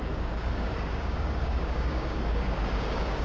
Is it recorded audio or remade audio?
remade